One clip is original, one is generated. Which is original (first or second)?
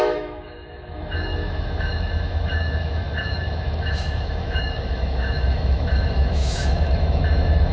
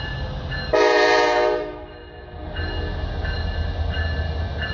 second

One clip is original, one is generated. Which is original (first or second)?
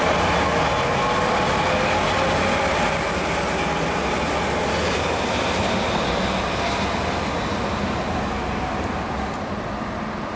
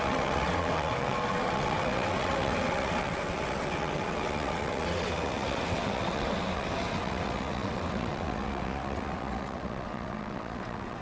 first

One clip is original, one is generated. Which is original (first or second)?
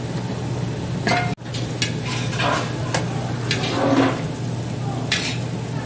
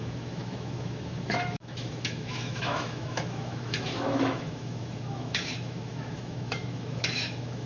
first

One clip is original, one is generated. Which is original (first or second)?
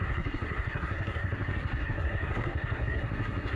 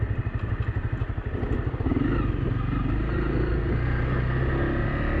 second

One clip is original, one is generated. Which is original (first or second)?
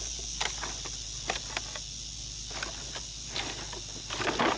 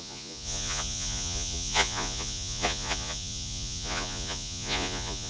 first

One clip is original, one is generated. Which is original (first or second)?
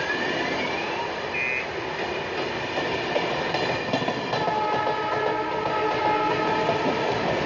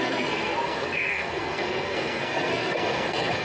first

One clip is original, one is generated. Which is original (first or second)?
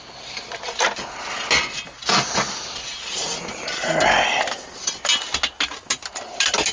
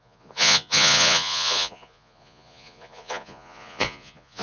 first